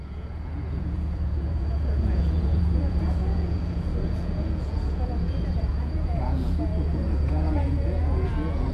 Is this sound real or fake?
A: fake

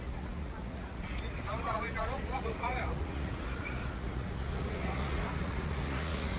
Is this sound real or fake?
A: fake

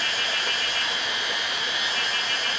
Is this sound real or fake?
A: real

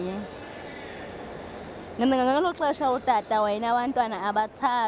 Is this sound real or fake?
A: real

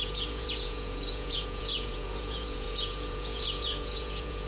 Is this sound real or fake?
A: fake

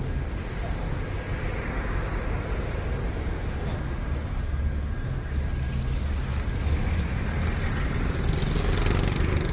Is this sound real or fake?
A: real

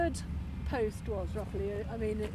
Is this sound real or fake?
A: real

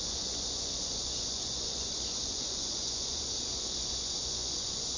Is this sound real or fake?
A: fake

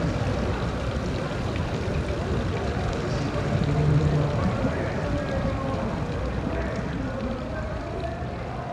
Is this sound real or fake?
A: real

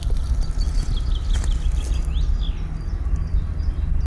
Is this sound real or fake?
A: real